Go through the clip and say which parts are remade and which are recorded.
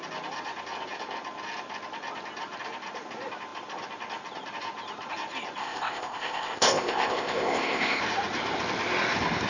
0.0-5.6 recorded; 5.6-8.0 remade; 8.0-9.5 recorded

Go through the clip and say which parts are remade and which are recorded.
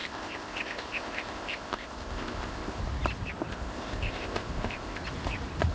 0.0-2.8 remade; 2.8-3.5 recorded; 3.5-5.0 remade; 5.0-5.7 recorded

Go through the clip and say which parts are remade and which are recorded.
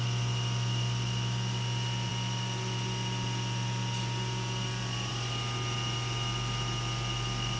0.0-7.6 recorded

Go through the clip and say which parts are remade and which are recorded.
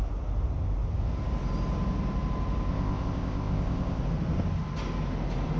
0.0-2.7 recorded; 2.7-4.0 remade; 4.0-5.6 recorded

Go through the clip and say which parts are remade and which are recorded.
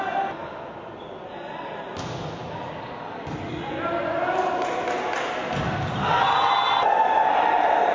0.0-7.9 recorded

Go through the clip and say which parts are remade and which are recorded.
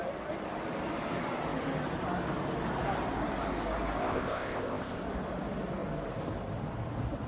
0.0-4.0 recorded; 4.0-5.0 remade; 5.0-7.3 recorded